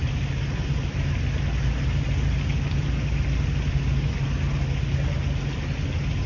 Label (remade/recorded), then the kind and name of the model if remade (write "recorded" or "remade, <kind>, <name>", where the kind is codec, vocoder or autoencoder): recorded